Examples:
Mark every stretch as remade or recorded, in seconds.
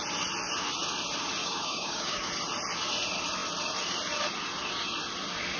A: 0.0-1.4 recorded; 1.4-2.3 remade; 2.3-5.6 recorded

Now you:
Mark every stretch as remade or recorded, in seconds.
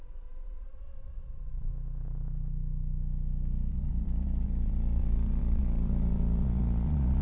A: 0.0-1.7 remade; 1.7-3.7 recorded; 3.7-7.2 remade